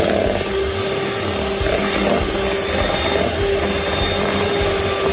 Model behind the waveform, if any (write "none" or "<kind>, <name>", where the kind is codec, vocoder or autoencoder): none